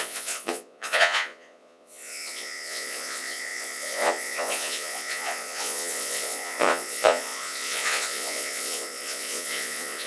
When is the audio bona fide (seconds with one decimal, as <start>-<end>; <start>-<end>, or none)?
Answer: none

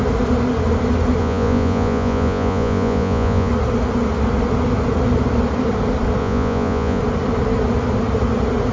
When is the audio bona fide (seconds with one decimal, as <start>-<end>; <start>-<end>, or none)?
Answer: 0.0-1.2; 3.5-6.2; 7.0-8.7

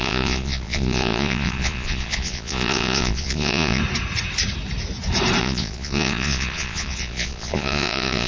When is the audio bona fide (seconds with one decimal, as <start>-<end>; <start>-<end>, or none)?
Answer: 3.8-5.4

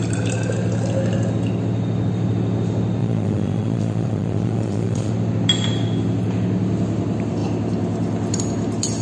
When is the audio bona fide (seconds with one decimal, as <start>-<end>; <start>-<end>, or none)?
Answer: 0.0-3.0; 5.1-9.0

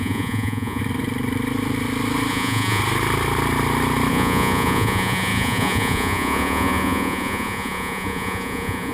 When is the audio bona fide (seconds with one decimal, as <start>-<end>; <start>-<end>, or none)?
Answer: 0.8-2.3; 2.8-4.1

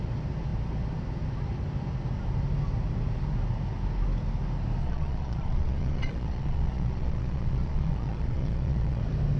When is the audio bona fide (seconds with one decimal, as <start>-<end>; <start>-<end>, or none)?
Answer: 0.0-4.8; 9.0-9.4